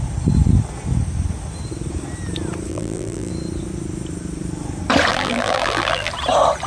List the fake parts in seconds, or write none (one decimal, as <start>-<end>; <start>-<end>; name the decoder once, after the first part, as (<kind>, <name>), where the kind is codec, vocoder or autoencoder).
2.7-3.3 (vocoder, BigVGAN v2); 5.1-6.1